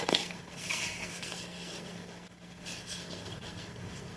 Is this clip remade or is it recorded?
remade